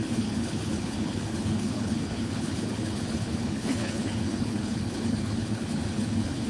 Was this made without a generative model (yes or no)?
no